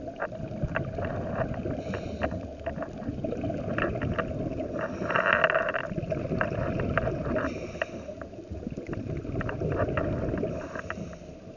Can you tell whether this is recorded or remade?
recorded